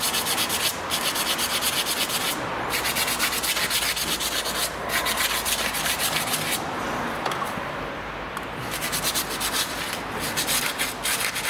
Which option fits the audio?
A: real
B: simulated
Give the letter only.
A